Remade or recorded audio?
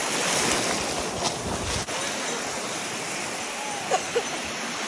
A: recorded